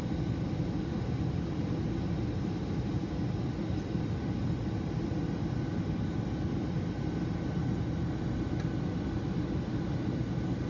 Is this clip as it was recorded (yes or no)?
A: yes